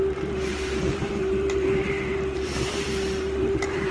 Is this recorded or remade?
remade